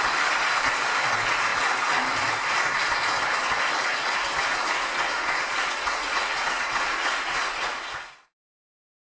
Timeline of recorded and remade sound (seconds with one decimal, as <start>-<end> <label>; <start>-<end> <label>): 0.0-4.5 recorded; 4.5-8.1 remade; 8.1-9.0 recorded